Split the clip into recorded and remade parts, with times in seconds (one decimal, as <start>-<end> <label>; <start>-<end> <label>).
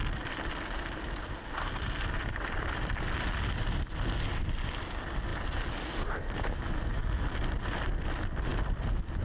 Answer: 0.0-9.2 recorded